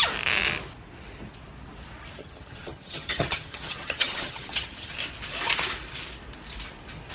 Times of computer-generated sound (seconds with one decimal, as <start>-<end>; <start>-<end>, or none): 2.2-4.9